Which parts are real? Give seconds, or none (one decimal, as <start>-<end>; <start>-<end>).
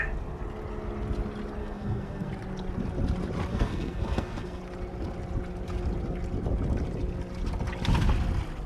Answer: 0.0-1.6; 2.3-3.5; 4.6-8.7